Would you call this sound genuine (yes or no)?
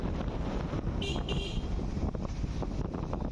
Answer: yes